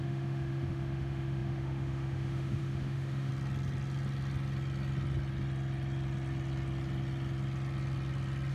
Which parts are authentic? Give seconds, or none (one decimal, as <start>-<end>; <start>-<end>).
3.3-8.5